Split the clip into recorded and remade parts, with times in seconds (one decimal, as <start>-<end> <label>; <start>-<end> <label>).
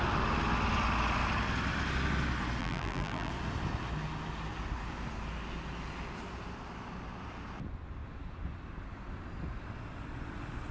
0.0-2.6 recorded; 2.6-3.3 remade; 3.3-10.7 recorded